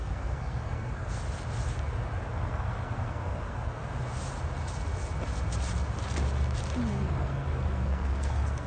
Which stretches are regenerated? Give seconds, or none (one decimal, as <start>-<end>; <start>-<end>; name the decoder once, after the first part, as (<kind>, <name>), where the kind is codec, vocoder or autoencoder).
0.0-1.2 (codec, SNAC); 2.3-3.8; 6.9-8.7